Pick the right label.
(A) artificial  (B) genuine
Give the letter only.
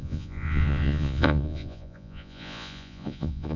A